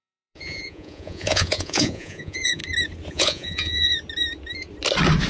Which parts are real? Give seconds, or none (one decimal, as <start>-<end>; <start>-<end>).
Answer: 2.6-3.1; 3.9-5.3

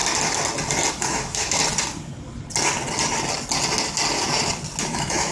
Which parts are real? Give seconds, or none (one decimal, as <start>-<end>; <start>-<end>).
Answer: 0.0-0.9; 1.6-4.8

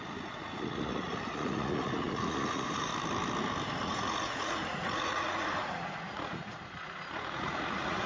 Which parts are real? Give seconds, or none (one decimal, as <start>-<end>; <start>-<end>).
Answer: 2.9-3.8

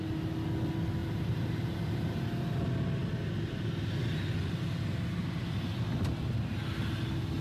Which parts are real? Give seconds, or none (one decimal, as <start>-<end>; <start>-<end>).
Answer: 0.0-1.0; 2.1-7.4